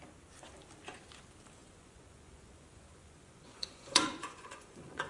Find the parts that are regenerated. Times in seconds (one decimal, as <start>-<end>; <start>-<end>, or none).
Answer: 1.6-5.1